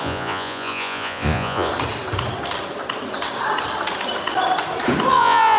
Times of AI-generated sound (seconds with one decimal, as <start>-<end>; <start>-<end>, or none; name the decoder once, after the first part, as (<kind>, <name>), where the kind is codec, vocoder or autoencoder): 0.0-1.7 (vocoder, Vocos); 5.1-5.6

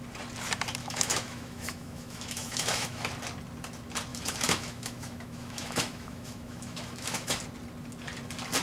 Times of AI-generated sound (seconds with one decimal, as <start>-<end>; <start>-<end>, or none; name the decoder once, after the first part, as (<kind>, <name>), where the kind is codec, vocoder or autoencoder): 0.8-3.0 (autoencoder, DAC-VAE); 4.1-7.4

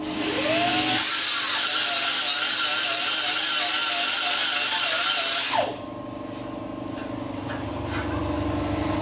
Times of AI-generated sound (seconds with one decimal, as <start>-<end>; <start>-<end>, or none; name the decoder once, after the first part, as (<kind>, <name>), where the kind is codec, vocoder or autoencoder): none

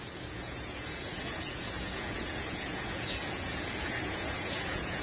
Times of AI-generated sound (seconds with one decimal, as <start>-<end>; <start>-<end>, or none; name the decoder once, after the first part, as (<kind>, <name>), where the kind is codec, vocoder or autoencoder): 0.0-5.0 (vocoder, Vocos)

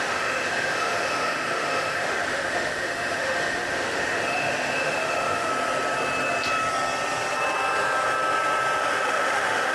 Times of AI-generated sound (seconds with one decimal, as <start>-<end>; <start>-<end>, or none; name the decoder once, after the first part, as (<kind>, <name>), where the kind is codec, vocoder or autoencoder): 0.0-5.5 (autoencoder, DAC-VAE); 8.8-9.7

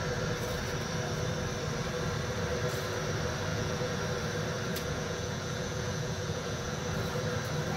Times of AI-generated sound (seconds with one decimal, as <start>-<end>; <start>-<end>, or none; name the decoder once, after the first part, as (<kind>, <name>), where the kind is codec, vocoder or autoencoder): 3.5-4.0 (vocoder, Vocos); 4.7-6.8